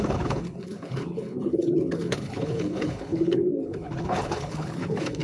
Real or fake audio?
fake